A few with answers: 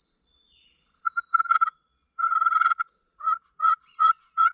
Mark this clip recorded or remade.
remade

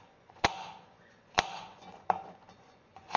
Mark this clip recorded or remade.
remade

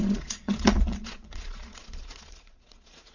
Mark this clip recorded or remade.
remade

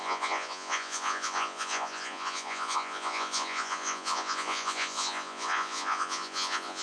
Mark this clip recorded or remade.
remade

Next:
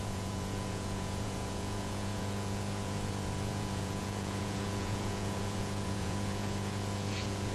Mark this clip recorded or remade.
remade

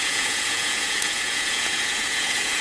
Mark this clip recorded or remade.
remade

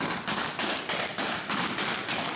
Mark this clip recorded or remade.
recorded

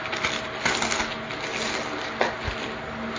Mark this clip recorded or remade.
recorded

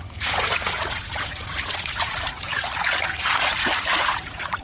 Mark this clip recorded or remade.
remade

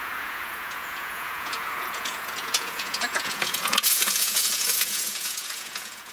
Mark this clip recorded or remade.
remade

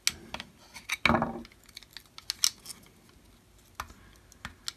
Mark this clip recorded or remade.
recorded